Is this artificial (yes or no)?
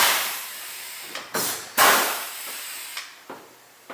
yes